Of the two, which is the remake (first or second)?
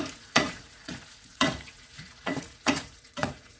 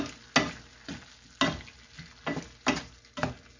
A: first